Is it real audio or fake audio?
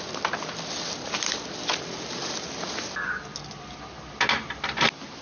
real